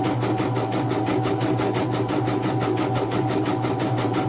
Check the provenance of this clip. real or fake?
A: real